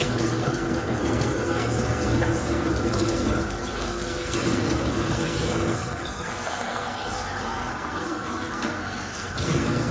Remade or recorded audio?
remade